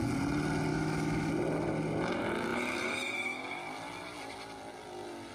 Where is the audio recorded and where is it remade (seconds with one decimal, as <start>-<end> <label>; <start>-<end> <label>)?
0.0-0.7 recorded; 0.7-1.3 remade; 1.3-5.3 recorded